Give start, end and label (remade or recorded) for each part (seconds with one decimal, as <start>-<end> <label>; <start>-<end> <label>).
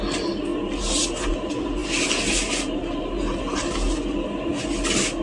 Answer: 0.0-5.2 recorded